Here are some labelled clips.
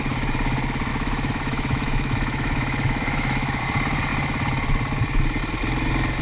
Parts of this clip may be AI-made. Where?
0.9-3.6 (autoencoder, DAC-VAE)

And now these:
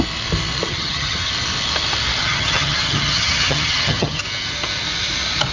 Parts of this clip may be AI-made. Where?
0.7-1.3 (vocoder, HiFi-GAN); 2.2-4.2

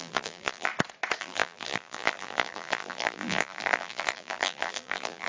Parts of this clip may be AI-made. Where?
0.0-0.7 (vocoder, BigVGAN v2); 1.2-5.3